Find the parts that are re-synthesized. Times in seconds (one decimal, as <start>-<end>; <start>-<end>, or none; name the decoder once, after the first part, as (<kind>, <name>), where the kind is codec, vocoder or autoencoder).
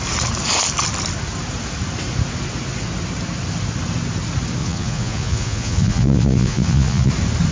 4.6-7.1 (vocoder, Vocos)